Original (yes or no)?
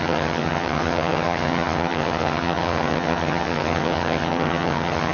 no